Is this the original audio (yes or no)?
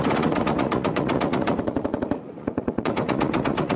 no